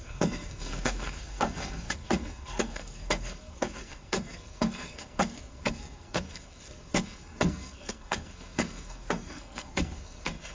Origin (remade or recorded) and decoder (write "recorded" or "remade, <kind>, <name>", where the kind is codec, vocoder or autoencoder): remade, codec, SNAC